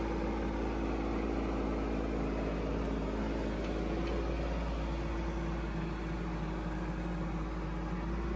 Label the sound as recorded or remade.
recorded